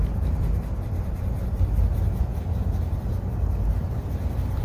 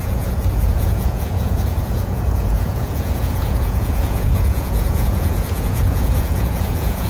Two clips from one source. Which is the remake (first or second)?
second